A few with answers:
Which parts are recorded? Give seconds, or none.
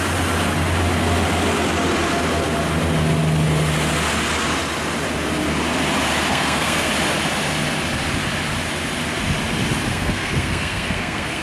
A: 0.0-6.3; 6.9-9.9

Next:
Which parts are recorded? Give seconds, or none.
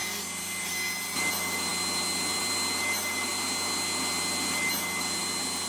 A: 0.0-5.7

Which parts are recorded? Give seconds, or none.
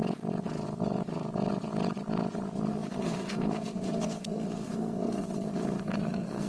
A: 0.0-2.7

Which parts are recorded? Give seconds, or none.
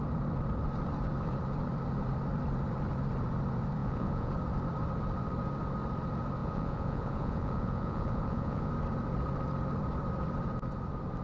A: 0.0-3.8; 4.3-6.4; 8.7-11.2